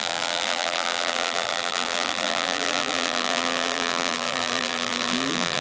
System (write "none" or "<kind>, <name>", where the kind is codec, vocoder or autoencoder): vocoder, BigVGAN v2